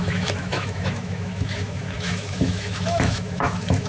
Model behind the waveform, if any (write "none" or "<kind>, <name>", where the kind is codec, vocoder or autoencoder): autoencoder, DAC-VAE